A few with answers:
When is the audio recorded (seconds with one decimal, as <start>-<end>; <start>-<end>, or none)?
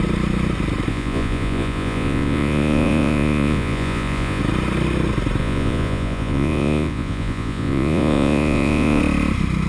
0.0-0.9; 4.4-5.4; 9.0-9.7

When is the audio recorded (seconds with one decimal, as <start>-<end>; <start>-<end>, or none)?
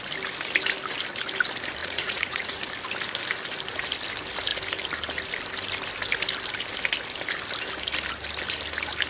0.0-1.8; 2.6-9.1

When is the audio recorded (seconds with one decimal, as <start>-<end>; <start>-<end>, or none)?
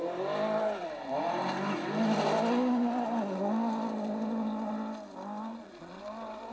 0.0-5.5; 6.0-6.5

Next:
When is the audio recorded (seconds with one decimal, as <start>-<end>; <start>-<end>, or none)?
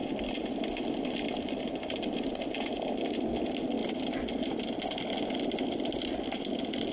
0.0-6.9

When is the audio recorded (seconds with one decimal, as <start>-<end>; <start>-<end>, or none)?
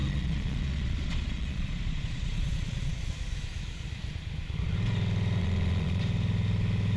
3.1-5.4; 6.0-7.0